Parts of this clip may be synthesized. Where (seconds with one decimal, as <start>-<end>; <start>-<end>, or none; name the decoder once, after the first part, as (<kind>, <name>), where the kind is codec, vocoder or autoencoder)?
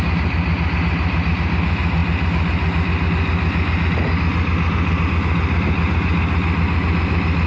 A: none